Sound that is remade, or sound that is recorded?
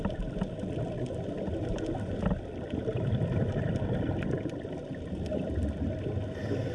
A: recorded